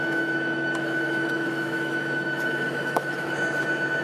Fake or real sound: fake